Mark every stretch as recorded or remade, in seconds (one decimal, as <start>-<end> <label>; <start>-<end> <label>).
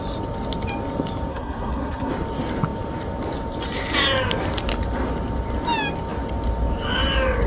0.0-1.3 recorded; 1.3-2.1 remade; 2.1-7.5 recorded